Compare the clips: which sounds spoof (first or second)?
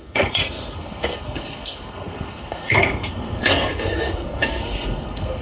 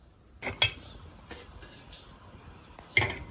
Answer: first